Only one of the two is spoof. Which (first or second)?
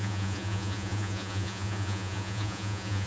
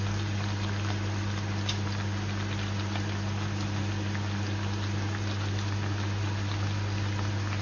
first